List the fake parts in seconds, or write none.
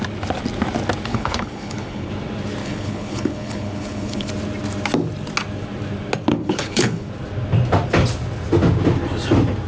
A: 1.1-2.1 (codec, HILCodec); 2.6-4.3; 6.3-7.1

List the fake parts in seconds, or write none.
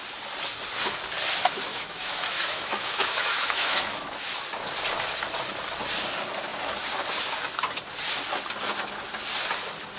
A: 1.7-4.3 (autoencoder, DAC-VAE)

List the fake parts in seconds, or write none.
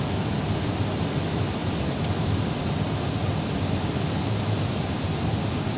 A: 1.6-2.7 (vocoder, BigVGAN v2)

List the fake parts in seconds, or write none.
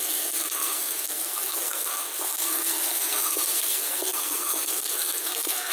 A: 0.0-5.7 (codec, SNAC)